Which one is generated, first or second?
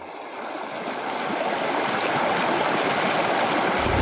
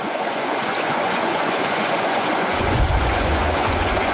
second